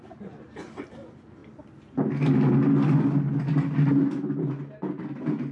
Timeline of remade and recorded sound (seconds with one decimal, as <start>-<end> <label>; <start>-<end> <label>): 0.0-1.4 remade; 1.4-4.7 recorded; 4.7-5.5 remade